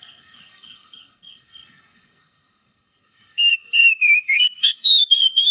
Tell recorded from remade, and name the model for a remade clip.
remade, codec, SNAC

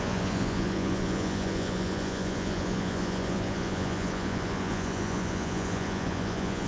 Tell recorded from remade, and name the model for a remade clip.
remade, vocoder, Vocos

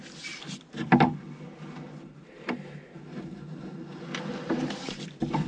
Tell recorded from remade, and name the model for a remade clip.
recorded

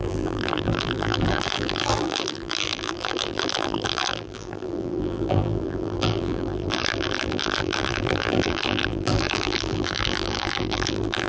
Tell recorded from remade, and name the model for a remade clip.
remade, vocoder, BigVGAN v2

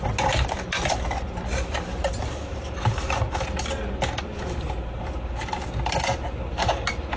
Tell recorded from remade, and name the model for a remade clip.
recorded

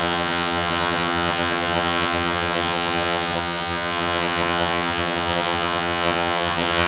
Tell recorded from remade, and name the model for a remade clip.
remade, vocoder, HiFi-GAN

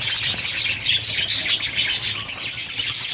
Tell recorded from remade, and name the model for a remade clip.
recorded